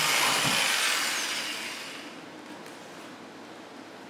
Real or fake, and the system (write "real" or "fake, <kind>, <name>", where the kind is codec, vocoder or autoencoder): real